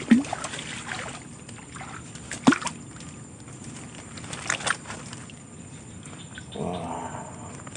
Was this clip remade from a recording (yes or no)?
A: no